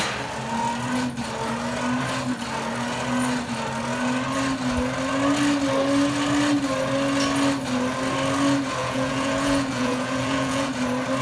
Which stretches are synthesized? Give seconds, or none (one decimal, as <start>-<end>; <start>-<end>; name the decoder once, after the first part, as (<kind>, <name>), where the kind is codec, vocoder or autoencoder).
8.8-10.7 (vocoder, Vocos)